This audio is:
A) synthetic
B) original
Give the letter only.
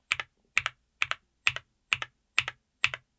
B